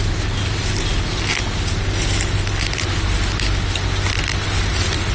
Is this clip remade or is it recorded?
recorded